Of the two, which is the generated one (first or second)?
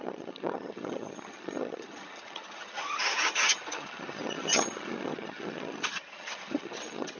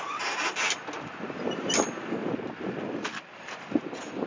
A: first